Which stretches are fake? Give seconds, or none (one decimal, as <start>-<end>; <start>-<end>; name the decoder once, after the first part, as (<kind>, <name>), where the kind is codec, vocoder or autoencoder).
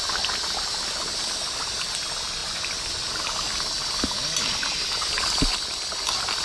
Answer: none